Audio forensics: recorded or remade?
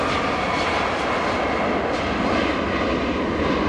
recorded